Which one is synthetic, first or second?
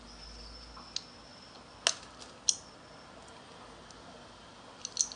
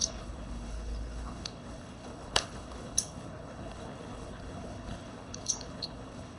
second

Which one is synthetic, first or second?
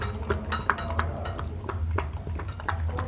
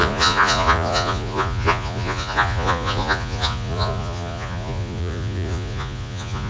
second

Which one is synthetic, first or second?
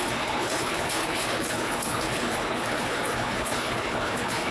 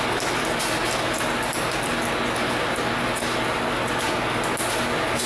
first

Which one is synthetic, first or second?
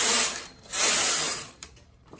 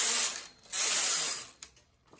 first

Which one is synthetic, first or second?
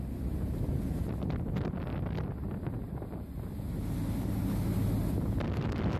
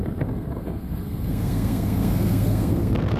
second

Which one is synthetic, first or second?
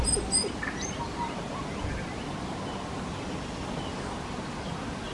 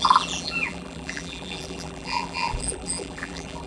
second